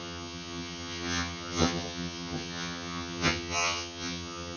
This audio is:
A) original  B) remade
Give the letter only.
B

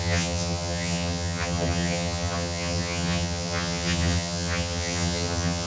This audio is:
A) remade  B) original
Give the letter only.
A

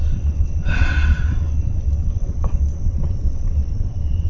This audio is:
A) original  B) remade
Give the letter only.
B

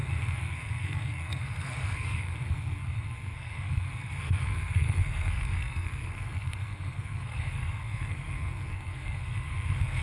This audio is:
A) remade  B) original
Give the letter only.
A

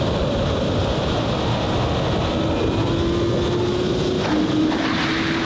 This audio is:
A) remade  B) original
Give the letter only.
B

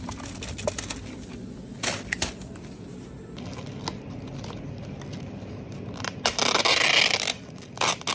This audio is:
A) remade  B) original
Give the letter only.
B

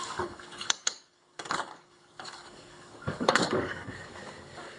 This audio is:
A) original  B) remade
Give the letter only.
B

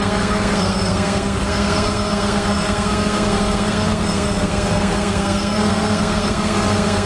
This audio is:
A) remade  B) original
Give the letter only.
A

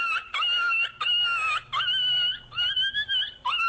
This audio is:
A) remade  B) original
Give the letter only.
B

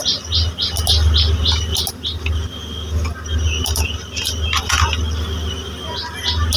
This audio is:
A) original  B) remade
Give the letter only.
A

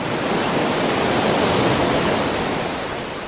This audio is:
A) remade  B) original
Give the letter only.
B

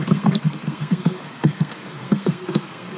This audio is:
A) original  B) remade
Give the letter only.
B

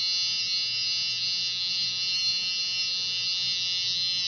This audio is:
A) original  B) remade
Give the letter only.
A